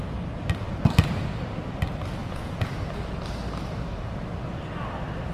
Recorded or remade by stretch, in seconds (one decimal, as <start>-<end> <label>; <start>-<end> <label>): 0.0-2.2 recorded; 2.2-2.7 remade; 2.7-5.3 recorded